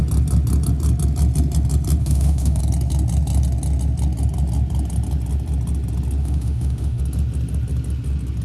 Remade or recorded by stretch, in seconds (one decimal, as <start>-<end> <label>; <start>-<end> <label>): 0.0-2.0 recorded; 2.0-2.6 remade; 2.6-6.2 recorded; 6.2-7.0 remade; 7.0-8.4 recorded